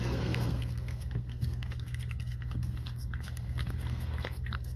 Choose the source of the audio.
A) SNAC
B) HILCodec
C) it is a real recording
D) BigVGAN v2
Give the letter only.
A